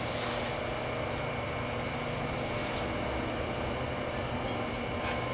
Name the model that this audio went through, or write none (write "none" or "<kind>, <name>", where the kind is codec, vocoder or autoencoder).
none